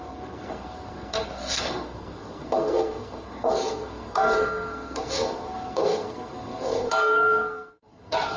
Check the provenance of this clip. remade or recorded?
remade